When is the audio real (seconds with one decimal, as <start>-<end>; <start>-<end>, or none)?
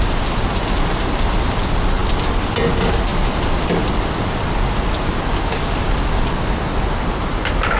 0.0-7.8